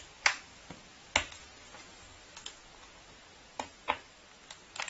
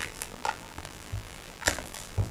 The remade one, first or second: second